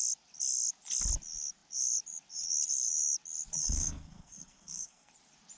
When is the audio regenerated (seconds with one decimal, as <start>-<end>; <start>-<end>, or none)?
3.6-5.1